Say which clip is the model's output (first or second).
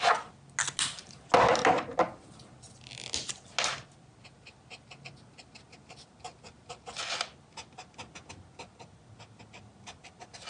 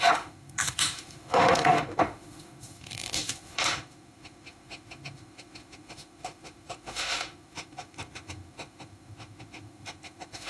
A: second